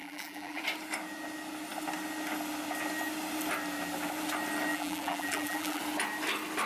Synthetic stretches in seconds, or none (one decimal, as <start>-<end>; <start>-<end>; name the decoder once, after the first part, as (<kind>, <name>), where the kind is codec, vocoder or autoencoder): 0.0-0.6 (vocoder, BigVGAN v2); 4.7-5.8